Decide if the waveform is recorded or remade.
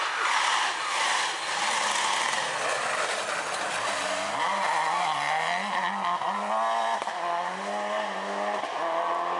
recorded